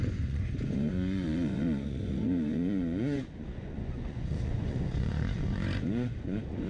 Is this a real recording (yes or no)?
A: no